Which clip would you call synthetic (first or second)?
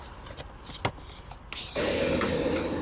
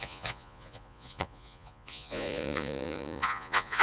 second